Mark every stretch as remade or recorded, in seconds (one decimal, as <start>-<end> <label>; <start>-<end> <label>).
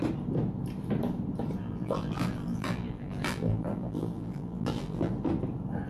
0.0-1.6 recorded; 1.6-5.1 remade; 5.1-5.9 recorded